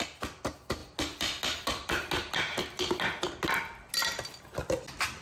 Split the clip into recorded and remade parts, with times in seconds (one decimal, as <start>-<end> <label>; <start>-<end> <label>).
0.0-5.2 recorded